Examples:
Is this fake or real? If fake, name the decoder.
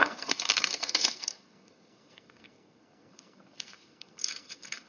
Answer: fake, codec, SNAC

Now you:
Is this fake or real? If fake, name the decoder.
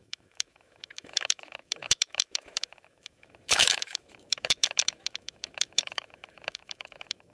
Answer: fake, autoencoder, DAC-VAE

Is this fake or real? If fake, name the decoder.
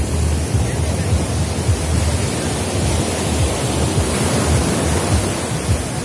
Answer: real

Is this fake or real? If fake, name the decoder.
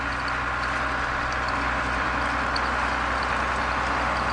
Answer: real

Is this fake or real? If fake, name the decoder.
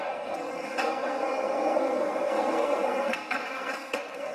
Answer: fake, codec, SNAC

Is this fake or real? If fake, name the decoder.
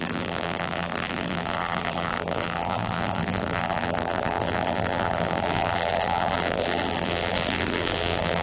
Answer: fake, vocoder, BigVGAN v2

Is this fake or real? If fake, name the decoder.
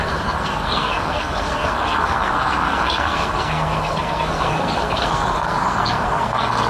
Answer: fake, codec, SNAC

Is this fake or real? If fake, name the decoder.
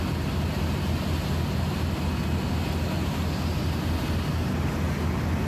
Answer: real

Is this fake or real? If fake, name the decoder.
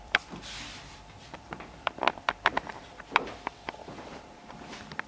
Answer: fake, vocoder, BigVGAN v2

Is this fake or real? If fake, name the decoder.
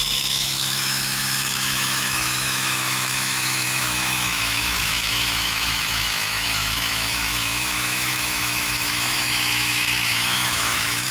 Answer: fake, autoencoder, DAC-VAE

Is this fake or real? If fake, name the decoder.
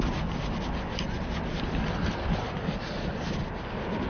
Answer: real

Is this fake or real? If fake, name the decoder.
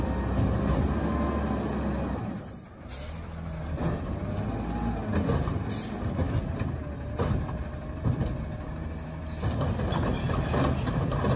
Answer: real